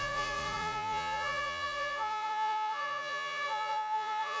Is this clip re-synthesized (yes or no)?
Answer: yes